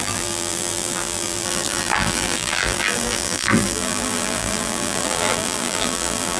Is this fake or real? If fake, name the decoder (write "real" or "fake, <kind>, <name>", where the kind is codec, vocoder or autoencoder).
fake, vocoder, BigVGAN v2